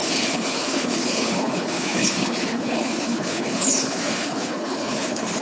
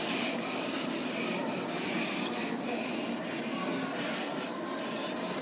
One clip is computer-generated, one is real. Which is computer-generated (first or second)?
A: first